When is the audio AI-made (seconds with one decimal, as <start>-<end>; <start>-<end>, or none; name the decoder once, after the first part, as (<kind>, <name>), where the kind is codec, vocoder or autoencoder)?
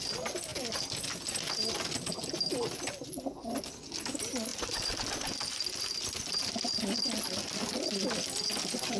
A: none